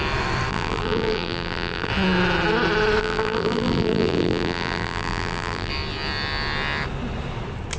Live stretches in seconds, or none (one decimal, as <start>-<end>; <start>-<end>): 0.0-0.5; 1.9-3.0; 5.7-7.8